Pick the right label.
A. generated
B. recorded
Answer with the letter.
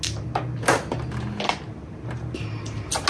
B